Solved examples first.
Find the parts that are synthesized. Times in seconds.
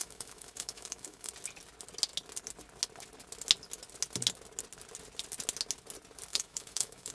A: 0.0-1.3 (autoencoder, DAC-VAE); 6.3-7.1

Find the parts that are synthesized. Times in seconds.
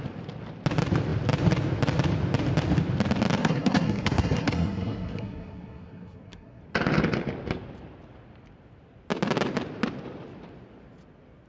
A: 3.4-6.6 (codec, SNAC)